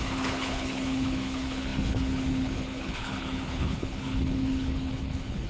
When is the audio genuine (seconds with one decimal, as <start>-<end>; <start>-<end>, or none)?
none